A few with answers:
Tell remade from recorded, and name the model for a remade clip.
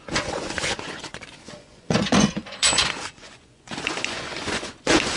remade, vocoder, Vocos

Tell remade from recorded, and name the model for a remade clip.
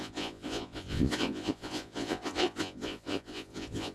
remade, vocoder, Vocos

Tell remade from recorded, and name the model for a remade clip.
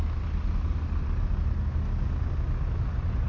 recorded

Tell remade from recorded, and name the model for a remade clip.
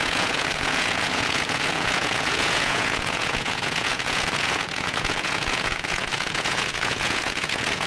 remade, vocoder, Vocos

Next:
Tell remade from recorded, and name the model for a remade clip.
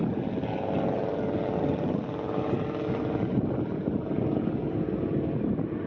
recorded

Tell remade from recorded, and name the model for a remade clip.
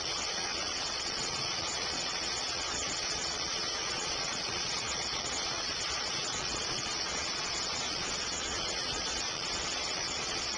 remade, vocoder, Vocos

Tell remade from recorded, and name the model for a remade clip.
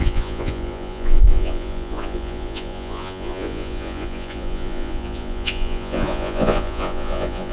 remade, vocoder, Vocos